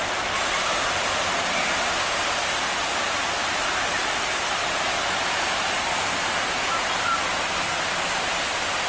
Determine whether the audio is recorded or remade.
recorded